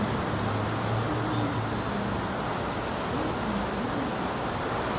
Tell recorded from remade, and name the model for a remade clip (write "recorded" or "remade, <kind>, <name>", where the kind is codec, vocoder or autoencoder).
recorded